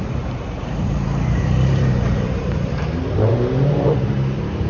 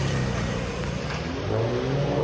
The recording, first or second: second